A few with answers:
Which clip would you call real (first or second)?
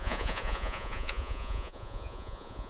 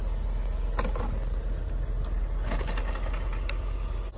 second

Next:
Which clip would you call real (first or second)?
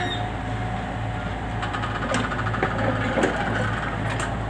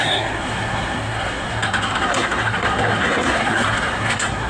first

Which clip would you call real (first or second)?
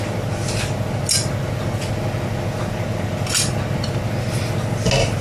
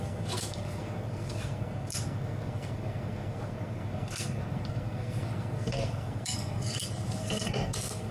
first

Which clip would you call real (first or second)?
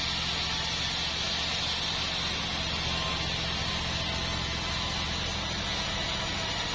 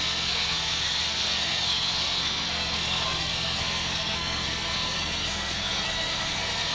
first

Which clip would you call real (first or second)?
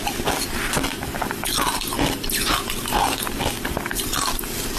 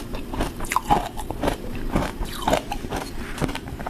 first